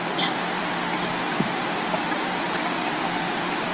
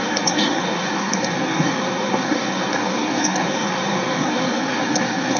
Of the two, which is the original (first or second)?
first